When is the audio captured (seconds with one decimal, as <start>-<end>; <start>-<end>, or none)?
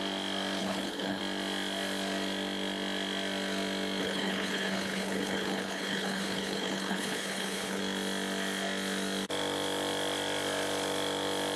0.0-0.6; 1.2-4.0; 7.8-11.6